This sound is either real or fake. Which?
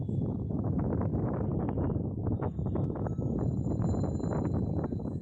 fake